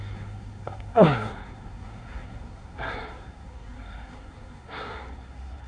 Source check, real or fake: fake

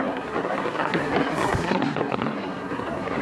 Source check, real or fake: fake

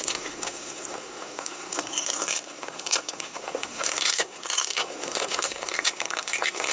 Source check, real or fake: fake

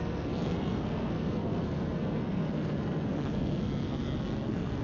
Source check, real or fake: fake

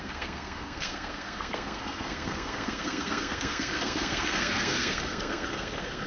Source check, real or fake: fake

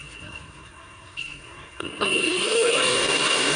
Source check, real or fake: fake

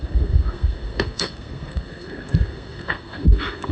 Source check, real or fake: fake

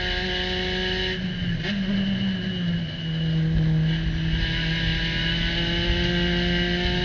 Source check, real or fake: real